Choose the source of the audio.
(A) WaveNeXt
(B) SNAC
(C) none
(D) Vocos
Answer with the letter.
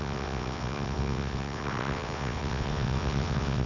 A